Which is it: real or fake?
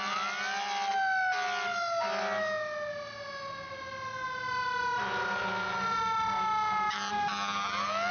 real